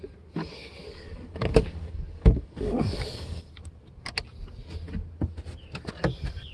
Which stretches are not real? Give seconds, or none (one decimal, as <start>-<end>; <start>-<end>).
0.4-3.5